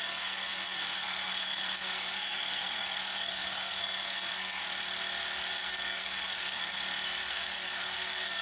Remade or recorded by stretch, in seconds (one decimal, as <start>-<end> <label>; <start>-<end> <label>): 0.0-4.6 remade; 4.6-5.5 recorded; 5.5-6.8 remade; 6.8-7.3 recorded; 7.3-8.4 remade